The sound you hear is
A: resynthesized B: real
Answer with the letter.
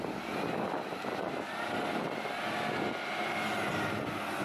B